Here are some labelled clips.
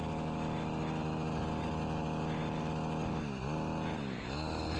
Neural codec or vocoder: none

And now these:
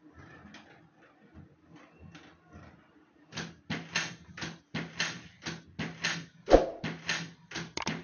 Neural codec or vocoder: none